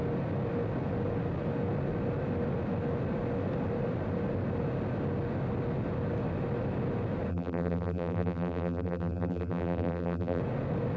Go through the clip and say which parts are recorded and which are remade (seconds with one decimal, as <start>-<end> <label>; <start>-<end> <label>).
0.0-7.3 recorded; 7.3-10.4 remade; 10.4-11.0 recorded